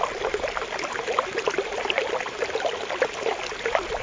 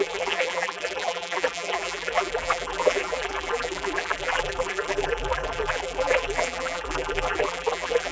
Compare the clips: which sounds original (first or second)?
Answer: first